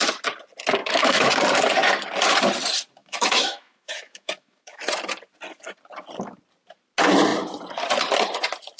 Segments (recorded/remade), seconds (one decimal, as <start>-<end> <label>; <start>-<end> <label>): 0.0-0.8 recorded; 0.8-1.3 remade; 1.3-3.0 recorded; 3.0-4.8 remade; 4.8-8.8 recorded